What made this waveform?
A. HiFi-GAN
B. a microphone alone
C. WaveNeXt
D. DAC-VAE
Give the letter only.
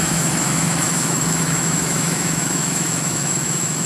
D